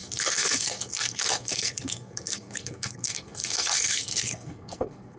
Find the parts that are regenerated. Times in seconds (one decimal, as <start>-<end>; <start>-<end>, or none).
0.0-5.2